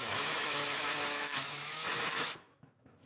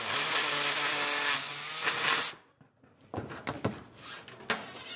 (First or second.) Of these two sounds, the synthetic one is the first